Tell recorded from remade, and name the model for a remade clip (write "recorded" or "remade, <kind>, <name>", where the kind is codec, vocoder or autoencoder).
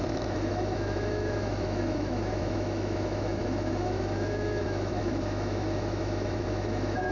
remade, autoencoder, DAC-VAE